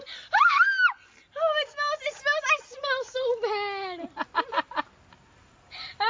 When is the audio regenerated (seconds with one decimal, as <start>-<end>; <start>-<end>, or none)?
none